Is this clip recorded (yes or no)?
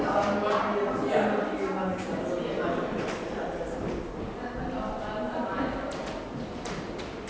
yes